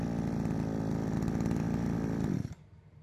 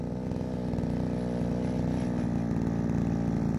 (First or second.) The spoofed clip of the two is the first